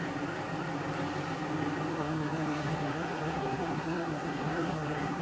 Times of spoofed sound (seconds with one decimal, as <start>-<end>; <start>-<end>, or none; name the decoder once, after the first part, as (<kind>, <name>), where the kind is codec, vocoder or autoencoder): 1.9-5.2 (codec, SNAC)